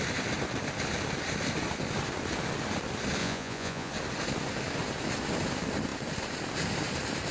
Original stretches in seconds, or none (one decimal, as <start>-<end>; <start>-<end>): 0.0-3.2; 3.9-7.3